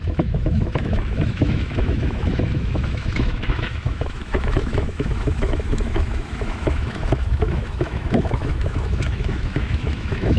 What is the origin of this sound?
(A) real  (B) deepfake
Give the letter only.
B